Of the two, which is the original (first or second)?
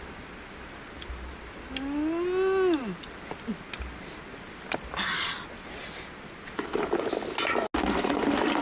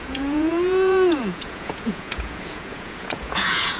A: first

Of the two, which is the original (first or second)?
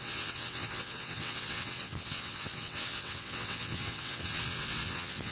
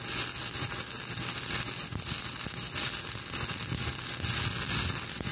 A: second